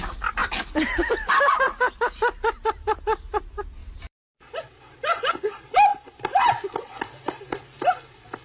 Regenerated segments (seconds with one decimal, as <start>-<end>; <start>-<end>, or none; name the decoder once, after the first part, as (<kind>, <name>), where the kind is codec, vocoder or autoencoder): 0.4-3.0 (vocoder, BigVGAN v2); 3.8-5.3